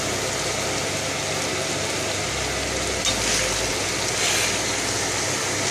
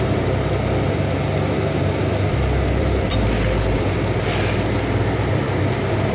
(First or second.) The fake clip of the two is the second